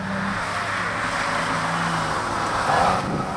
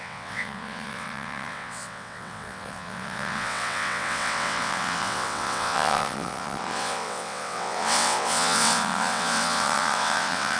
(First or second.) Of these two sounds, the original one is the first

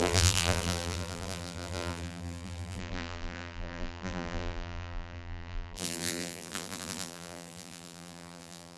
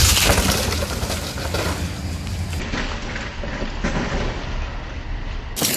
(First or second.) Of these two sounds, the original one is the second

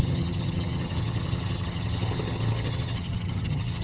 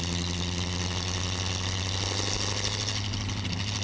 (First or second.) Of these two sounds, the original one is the second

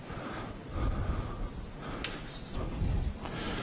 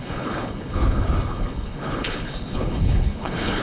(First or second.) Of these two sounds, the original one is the first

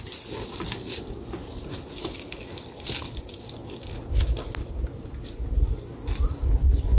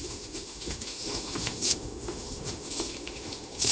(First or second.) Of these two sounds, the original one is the first